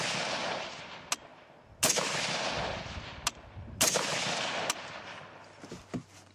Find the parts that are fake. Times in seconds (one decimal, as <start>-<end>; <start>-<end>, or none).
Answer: 0.4-0.9